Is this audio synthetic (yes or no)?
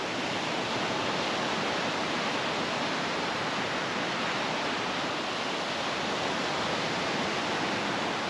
no